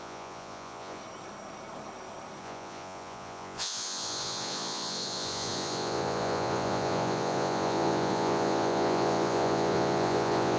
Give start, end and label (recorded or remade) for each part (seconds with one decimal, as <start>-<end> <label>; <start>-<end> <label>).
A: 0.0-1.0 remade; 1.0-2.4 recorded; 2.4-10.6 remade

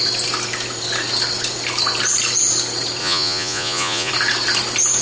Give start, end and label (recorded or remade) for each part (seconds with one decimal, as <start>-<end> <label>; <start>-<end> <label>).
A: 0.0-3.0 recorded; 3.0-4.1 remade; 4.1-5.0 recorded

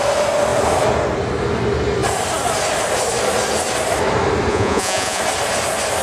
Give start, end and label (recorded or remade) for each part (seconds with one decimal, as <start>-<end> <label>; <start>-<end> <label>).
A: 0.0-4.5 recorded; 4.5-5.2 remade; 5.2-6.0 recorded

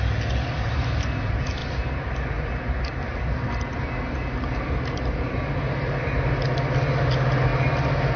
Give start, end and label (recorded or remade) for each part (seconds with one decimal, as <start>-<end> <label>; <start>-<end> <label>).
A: 0.0-8.2 recorded

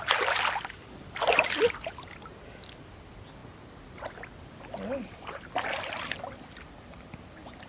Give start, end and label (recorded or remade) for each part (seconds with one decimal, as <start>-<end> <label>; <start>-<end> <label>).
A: 0.0-7.7 recorded

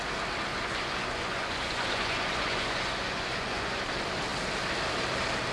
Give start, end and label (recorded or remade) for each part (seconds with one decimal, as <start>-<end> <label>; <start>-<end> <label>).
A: 0.0-0.5 recorded; 0.5-3.8 remade; 3.8-5.5 recorded